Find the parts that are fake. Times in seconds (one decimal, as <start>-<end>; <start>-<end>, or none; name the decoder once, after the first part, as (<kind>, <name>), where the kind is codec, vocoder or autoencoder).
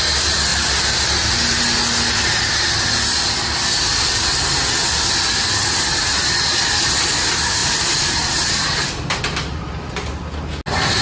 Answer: 0.5-1.1 (vocoder, BigVGAN v2); 7.6-9.2